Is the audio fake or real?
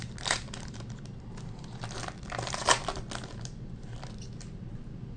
real